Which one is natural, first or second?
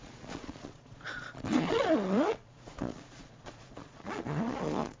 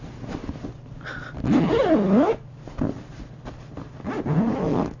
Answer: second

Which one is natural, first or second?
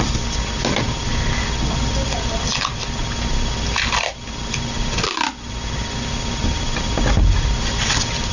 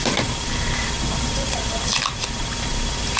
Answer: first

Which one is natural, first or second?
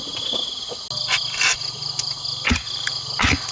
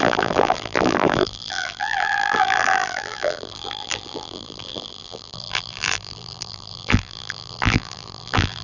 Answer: first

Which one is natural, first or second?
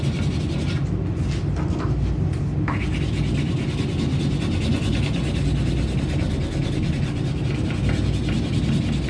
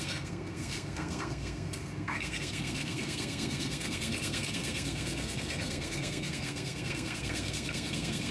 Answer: first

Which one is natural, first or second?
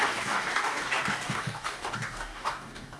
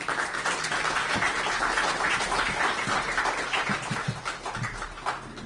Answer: second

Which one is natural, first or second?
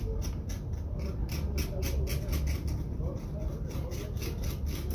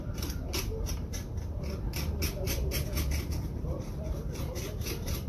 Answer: first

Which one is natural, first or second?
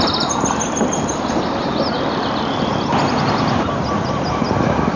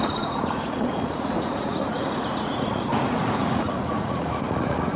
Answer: first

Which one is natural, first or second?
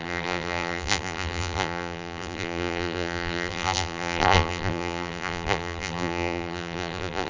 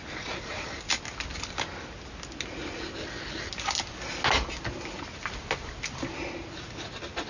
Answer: second